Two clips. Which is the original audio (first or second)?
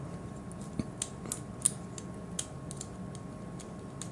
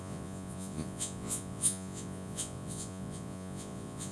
first